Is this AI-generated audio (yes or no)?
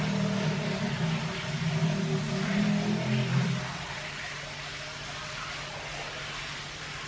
no